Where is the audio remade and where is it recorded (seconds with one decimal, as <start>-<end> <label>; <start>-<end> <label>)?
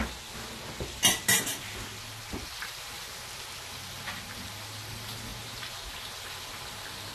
0.0-7.1 recorded